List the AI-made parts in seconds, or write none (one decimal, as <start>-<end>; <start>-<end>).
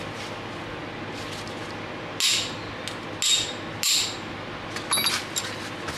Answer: none